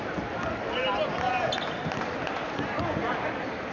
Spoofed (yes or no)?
no